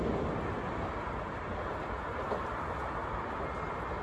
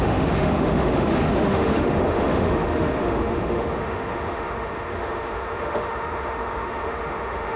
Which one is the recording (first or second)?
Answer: first